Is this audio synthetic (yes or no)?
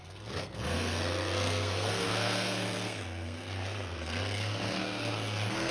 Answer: yes